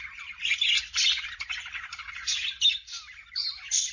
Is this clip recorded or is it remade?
recorded